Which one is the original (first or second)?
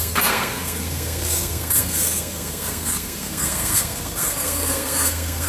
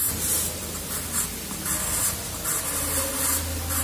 second